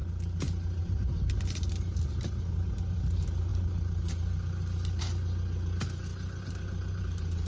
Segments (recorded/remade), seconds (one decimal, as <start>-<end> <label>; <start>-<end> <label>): 0.0-7.5 recorded